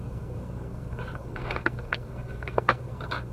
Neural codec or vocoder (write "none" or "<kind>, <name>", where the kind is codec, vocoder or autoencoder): codec, SNAC